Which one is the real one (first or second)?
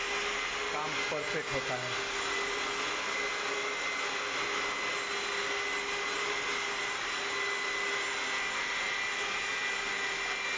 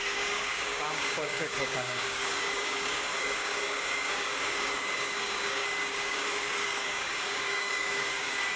first